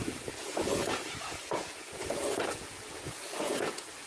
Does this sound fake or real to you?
fake